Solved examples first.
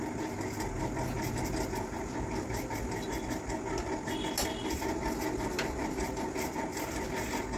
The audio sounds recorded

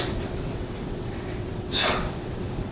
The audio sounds remade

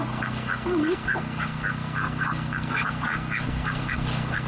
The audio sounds remade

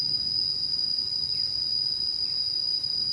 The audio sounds recorded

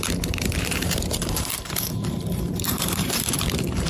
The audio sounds remade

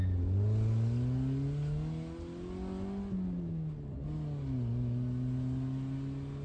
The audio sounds recorded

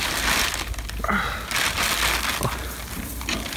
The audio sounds recorded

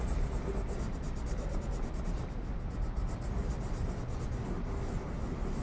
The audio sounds recorded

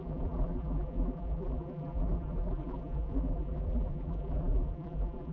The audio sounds remade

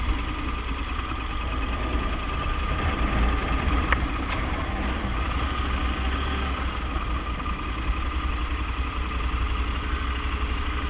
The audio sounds recorded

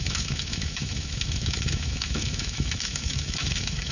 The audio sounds remade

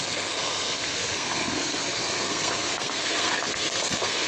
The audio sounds remade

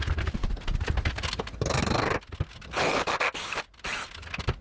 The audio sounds recorded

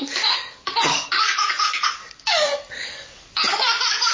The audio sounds remade